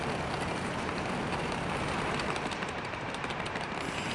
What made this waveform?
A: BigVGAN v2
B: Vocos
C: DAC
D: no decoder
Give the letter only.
A